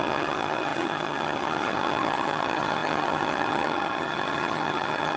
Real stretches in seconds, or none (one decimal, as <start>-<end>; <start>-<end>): none